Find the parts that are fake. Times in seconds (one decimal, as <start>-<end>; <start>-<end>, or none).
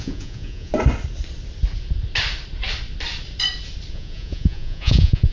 0.0-0.7; 3.9-5.3